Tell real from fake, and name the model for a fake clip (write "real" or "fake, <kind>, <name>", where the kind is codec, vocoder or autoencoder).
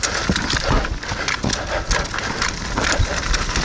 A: real